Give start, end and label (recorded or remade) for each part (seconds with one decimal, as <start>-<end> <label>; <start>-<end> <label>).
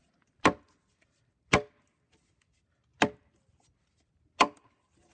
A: 0.0-5.1 recorded